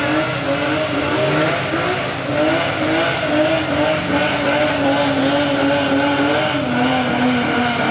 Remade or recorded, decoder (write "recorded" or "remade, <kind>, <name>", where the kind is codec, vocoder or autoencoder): recorded